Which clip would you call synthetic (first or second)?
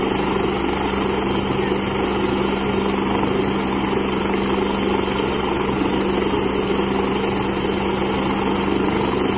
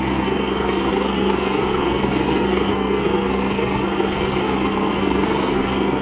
second